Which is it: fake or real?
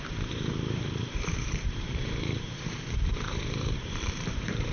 fake